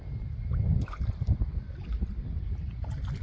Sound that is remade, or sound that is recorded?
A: recorded